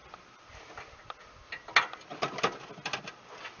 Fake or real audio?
real